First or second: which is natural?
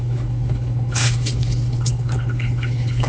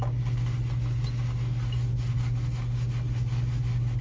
second